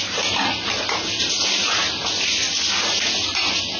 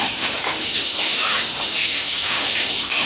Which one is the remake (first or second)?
second